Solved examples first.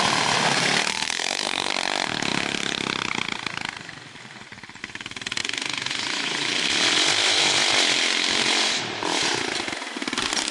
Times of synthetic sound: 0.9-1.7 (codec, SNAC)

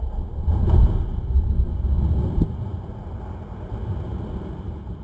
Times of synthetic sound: 0.5-1.0 (vocoder, Vocos)

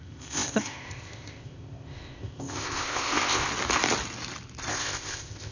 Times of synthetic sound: 0.0-3.5 (codec, ZipCodec); 4.7-5.5

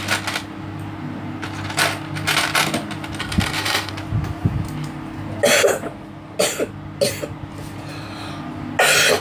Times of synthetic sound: 3.2-3.9 (codec, SNAC)

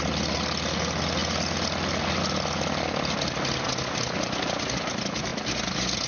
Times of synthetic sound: none